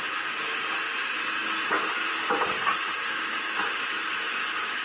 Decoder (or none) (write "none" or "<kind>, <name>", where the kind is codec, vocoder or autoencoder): none